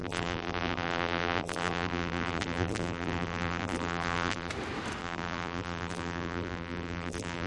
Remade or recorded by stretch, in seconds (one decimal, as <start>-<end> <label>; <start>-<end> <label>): 0.0-4.5 remade; 4.5-5.0 recorded; 5.0-7.5 remade